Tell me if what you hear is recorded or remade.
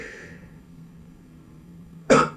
remade